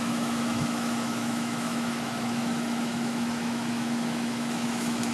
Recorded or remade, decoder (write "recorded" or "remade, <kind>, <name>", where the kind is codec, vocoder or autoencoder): remade, autoencoder, DAC-VAE